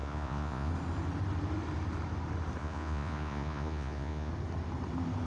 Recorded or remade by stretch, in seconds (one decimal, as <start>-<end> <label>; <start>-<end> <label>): 0.0-0.7 remade; 0.7-2.6 recorded; 2.6-4.3 remade; 4.3-5.3 recorded